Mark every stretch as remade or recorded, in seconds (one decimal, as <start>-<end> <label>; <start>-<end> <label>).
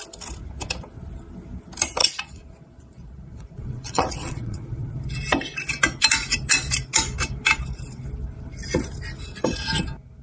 0.0-2.0 recorded; 2.0-4.9 remade; 4.9-10.2 recorded